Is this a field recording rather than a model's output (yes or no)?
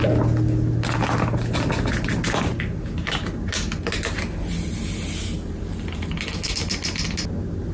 yes